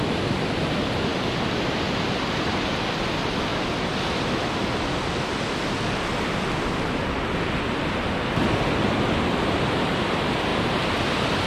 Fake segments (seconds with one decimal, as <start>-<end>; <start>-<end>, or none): none